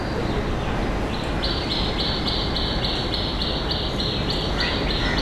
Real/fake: real